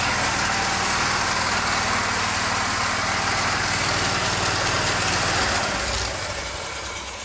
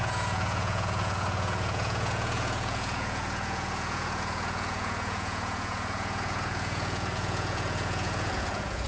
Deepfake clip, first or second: second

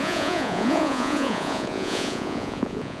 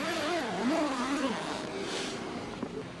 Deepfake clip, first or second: first